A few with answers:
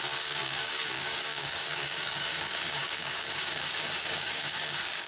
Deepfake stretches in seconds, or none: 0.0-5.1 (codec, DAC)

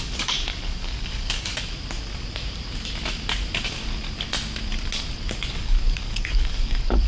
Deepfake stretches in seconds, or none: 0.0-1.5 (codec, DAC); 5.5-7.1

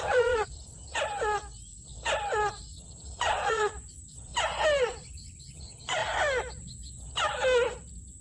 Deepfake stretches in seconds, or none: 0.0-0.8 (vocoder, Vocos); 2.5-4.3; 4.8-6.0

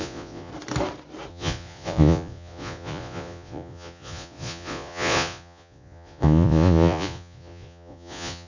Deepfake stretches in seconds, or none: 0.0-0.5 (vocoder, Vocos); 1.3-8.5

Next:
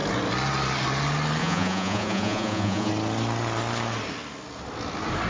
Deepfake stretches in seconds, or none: 1.4-2.9 (vocoder, Vocos)

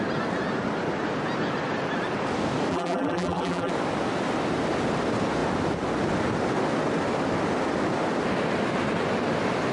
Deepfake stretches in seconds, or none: 2.7-3.7 (vocoder, BigVGAN v2)

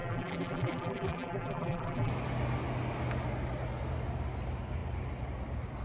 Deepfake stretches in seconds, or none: 0.0-2.1 (vocoder, BigVGAN v2)